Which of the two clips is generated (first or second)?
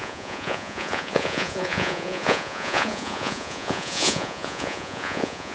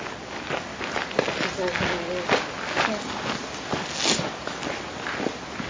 first